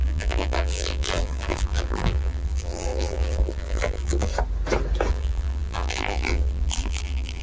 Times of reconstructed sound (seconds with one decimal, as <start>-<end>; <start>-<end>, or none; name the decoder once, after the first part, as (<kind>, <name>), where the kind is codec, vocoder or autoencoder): 0.0-4.3 (vocoder, BigVGAN v2); 5.1-7.4

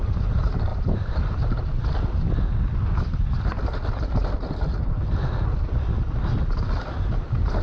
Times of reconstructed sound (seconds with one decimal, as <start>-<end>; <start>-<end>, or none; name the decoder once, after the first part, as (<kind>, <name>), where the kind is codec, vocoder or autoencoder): 0.7-1.8 (vocoder, BigVGAN v2)

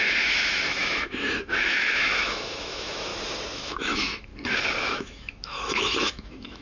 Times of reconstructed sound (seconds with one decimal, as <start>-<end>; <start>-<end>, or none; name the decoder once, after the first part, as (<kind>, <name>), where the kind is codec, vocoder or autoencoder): 0.0-3.1 (autoencoder, DAC-VAE); 3.6-4.3; 4.8-6.6

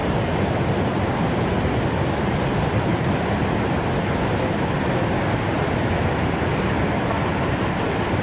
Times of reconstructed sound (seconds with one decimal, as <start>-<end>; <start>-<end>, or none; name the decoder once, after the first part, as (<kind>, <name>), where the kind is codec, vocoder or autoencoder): none

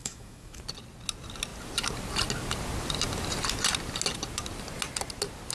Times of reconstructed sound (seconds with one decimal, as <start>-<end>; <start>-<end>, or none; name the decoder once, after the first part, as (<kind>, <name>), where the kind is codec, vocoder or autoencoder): 0.0-0.6 (autoencoder, DAC-VAE)

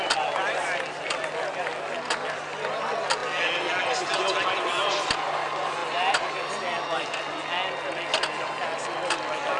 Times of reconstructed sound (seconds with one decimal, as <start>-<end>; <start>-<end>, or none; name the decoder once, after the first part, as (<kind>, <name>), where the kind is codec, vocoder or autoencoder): none